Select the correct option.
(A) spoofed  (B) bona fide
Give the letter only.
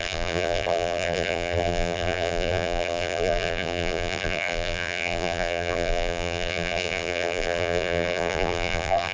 A